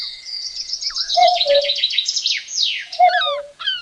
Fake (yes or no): yes